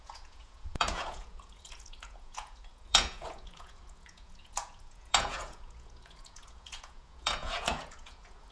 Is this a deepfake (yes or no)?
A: yes